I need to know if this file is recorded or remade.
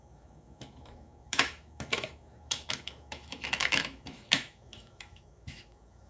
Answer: remade